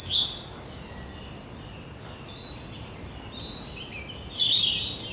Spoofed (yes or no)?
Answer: no